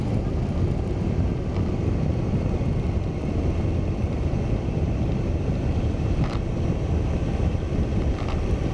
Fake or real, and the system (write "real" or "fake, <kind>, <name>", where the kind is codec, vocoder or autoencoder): real